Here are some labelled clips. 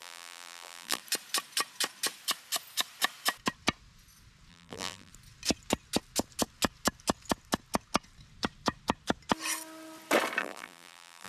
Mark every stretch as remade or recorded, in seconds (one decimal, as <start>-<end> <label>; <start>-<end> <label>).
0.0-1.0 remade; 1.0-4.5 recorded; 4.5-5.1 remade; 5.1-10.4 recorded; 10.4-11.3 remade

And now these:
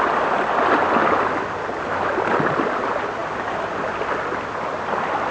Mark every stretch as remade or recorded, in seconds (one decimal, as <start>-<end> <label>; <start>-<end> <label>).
0.0-5.3 recorded

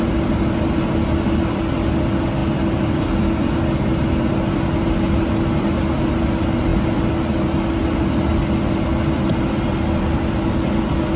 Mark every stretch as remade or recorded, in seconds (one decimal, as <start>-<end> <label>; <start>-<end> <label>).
0.0-11.2 recorded